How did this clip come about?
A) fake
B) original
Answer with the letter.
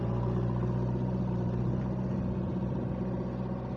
B